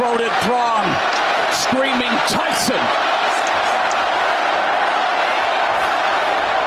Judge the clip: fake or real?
real